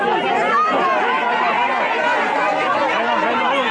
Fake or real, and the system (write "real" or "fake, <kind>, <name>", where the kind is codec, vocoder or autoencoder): real